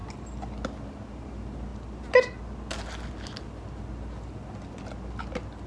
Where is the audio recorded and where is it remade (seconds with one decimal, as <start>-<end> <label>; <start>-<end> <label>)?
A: 0.0-5.7 recorded